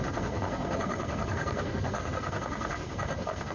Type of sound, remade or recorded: remade